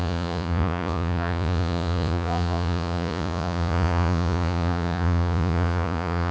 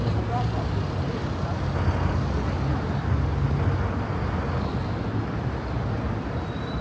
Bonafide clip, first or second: second